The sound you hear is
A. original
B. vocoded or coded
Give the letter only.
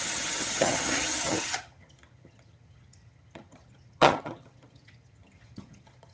B